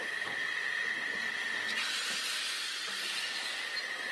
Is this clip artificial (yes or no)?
no